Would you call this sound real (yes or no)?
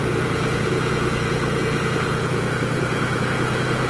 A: no